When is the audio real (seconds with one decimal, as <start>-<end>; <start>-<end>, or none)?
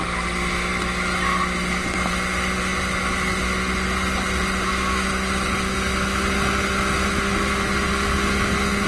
0.0-8.9